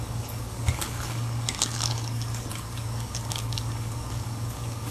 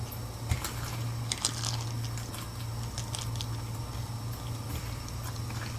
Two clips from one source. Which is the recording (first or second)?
second